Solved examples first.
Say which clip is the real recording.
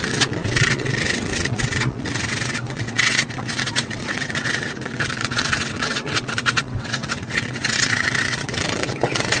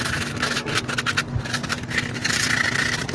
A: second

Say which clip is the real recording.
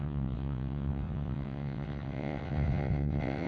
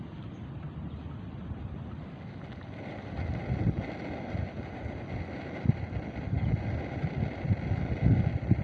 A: second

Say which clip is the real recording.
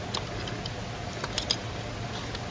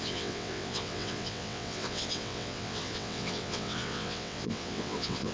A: first